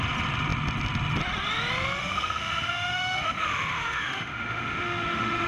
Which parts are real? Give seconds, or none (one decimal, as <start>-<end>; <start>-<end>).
0.0-2.0